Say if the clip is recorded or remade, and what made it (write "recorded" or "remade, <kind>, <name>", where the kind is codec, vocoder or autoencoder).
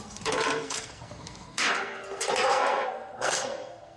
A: remade, codec, SNAC